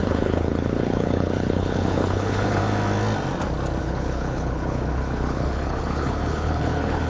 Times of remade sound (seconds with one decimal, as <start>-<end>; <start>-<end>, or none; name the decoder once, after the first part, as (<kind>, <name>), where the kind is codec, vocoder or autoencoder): 0.0-2.6 (codec, HILCodec); 3.8-7.1